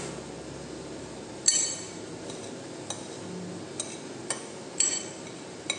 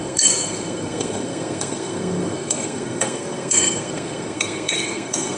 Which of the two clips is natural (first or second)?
first